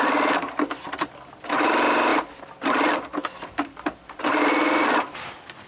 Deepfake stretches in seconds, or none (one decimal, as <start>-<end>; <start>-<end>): none